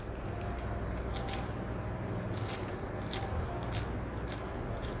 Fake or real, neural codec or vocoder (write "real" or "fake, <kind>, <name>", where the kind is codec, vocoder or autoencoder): real